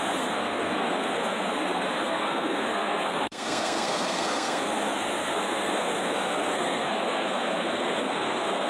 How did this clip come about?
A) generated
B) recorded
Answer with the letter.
A